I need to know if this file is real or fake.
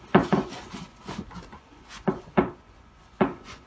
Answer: fake